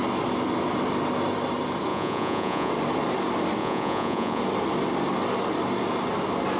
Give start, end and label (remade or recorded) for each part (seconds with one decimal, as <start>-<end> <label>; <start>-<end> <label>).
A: 0.0-1.9 recorded; 1.9-2.7 remade; 2.7-3.6 recorded; 3.6-4.4 remade; 4.4-6.6 recorded